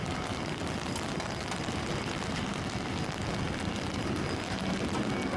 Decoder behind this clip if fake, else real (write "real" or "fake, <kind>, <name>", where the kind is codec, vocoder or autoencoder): real